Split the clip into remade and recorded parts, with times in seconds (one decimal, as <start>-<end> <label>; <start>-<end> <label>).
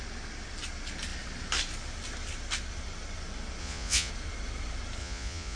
0.0-3.6 recorded; 3.6-4.1 remade; 4.1-5.0 recorded; 5.0-5.6 remade